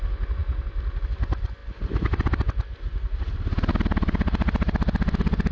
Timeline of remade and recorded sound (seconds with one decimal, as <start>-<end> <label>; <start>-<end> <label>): 0.0-5.5 recorded